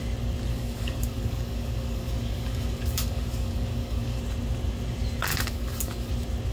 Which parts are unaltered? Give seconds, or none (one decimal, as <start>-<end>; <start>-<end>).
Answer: 0.0-0.5; 4.2-5.3; 6.1-6.5